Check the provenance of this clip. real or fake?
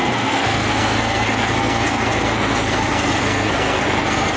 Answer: fake